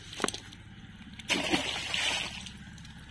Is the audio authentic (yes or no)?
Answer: yes